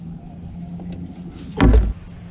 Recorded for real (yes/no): yes